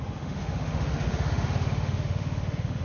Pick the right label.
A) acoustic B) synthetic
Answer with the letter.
B